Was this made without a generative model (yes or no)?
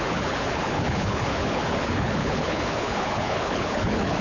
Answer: no